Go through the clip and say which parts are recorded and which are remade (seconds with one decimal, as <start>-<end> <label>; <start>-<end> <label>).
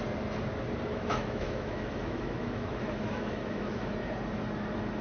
0.0-0.9 recorded; 0.9-3.9 remade; 3.9-5.0 recorded